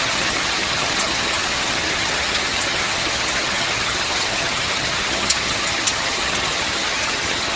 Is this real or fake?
fake